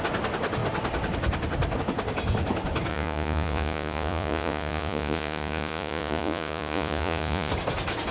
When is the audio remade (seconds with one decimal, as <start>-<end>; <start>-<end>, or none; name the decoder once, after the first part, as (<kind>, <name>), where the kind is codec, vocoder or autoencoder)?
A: 2.9-7.5 (vocoder, Vocos)

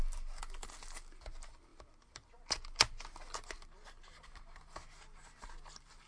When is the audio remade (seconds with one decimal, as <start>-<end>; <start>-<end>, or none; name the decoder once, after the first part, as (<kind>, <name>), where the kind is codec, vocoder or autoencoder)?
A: none